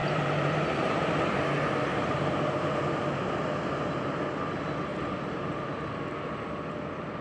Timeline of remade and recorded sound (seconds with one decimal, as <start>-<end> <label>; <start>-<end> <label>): 0.0-1.1 remade; 1.1-1.9 recorded; 1.9-2.8 remade; 2.8-4.9 recorded; 4.9-6.0 remade; 6.0-7.2 recorded